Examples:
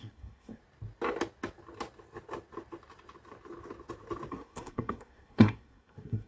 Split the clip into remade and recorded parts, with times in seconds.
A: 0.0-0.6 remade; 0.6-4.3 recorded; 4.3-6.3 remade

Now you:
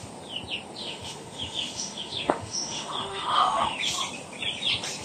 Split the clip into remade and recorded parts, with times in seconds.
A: 0.0-0.8 recorded; 0.8-3.8 remade; 3.8-5.0 recorded

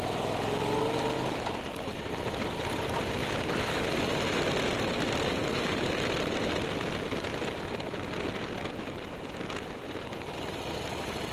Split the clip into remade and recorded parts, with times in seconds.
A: 0.0-3.2 recorded; 3.2-4.0 remade; 4.0-11.3 recorded

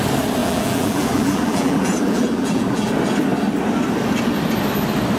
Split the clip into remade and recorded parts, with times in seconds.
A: 0.0-0.4 recorded; 0.4-2.9 remade; 2.9-5.2 recorded

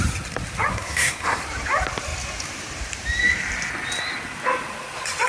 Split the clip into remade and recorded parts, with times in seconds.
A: 0.0-0.7 recorded; 0.7-1.4 remade; 1.4-5.3 recorded

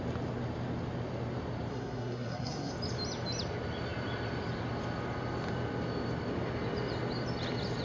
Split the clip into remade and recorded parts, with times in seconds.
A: 0.0-1.7 recorded; 1.7-2.7 remade; 2.7-7.8 recorded

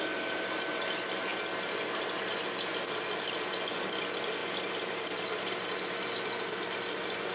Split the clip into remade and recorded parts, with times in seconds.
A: 0.0-7.3 recorded

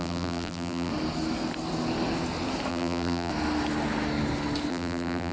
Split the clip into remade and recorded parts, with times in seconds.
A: 0.0-0.9 remade; 0.9-2.7 recorded; 2.7-3.3 remade; 3.3-4.7 recorded; 4.7-5.3 remade